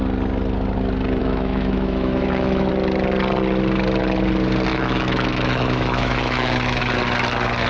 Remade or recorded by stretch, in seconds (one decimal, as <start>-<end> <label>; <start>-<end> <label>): 0.0-1.2 recorded; 1.2-2.7 remade; 2.7-4.7 recorded; 4.7-6.8 remade; 6.8-7.7 recorded